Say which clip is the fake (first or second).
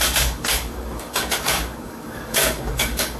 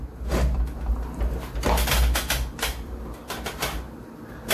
first